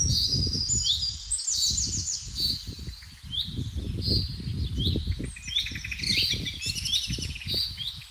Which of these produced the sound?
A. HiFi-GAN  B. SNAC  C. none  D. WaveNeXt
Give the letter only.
C